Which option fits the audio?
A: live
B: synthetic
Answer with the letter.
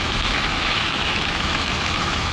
B